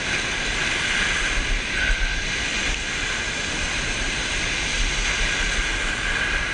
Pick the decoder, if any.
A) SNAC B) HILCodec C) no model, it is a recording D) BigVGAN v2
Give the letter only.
C